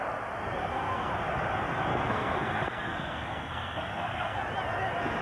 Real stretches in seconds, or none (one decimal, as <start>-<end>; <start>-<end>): 0.0-0.6; 1.1-1.9; 4.4-5.2